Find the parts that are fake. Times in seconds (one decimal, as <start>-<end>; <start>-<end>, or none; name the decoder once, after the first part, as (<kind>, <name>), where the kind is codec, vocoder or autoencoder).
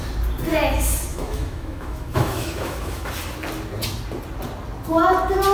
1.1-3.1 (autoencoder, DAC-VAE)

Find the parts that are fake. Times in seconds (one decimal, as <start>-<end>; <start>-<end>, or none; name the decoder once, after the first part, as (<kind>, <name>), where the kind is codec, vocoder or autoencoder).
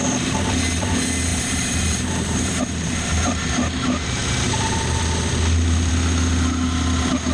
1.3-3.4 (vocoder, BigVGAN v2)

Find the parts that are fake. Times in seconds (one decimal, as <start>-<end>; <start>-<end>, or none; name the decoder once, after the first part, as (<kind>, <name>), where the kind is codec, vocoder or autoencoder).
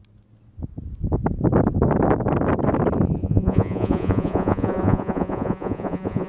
3.2-6.3 (vocoder, Vocos)